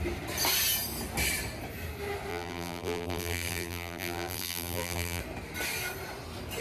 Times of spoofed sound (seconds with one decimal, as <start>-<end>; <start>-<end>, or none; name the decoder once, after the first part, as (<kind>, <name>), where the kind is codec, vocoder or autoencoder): 2.3-5.2 (vocoder, BigVGAN v2)